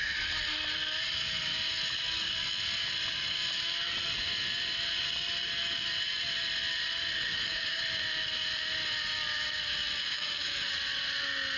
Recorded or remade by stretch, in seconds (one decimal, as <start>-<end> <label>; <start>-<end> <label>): 0.0-7.3 recorded; 7.3-7.8 remade; 7.8-10.0 recorded; 10.0-10.7 remade; 10.7-11.6 recorded